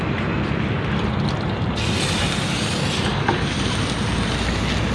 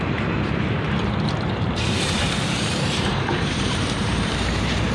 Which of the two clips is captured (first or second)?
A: first